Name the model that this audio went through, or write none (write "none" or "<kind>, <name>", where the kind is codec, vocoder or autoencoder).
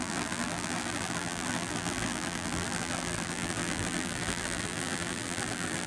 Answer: vocoder, BigVGAN v2